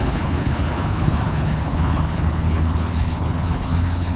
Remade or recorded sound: remade